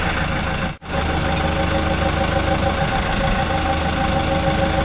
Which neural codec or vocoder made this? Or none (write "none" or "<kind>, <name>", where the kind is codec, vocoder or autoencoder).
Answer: none